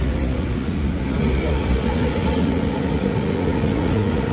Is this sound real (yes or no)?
no